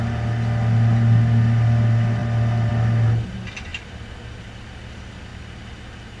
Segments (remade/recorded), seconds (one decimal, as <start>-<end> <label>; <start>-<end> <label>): 0.0-2.2 recorded; 2.2-2.7 remade; 2.7-3.7 recorded; 3.7-4.3 remade; 4.3-6.2 recorded